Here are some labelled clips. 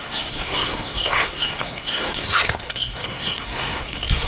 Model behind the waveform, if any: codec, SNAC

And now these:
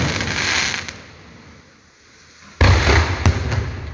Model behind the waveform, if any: none